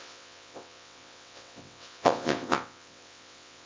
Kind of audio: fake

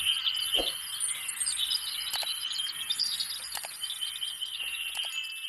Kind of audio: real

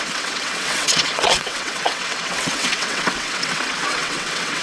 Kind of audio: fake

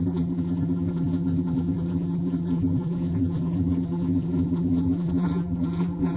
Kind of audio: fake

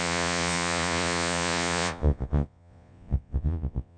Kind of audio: fake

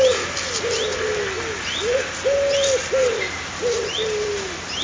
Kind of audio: real